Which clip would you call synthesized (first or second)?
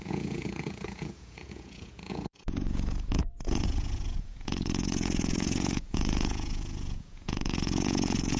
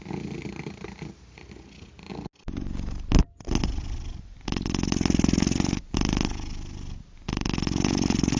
first